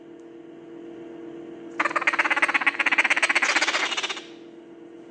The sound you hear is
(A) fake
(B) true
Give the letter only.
B